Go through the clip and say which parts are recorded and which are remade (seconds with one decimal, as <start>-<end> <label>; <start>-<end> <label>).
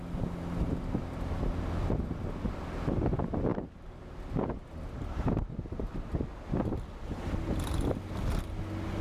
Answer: 0.0-3.5 recorded; 3.5-7.9 remade; 7.9-9.0 recorded